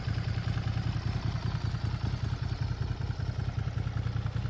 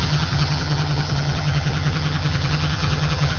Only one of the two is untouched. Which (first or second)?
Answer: first